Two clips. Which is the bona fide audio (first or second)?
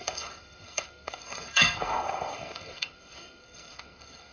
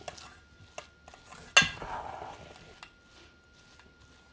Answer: second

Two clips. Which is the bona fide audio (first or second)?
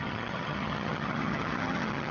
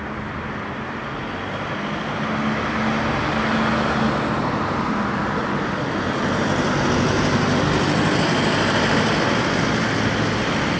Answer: second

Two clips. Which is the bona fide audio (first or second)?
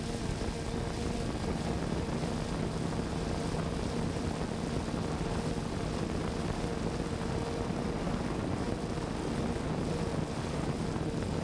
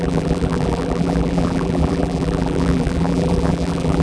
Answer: first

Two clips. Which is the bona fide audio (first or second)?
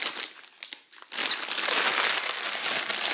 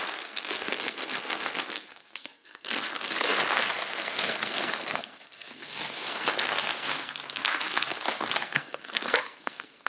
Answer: first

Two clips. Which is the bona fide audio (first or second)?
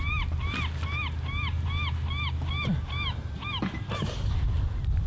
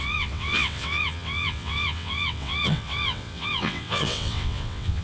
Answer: first